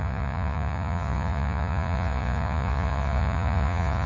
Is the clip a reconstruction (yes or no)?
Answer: yes